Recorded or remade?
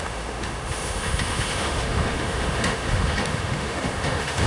remade